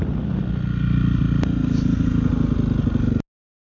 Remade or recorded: recorded